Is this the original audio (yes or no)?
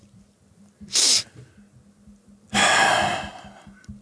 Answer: yes